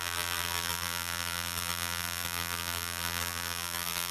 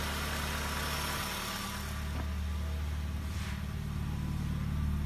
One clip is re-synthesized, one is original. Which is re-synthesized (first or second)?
first